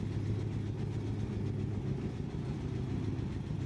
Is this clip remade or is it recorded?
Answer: recorded